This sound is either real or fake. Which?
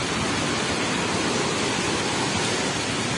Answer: real